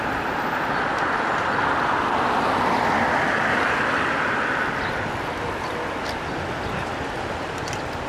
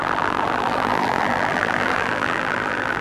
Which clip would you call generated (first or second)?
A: second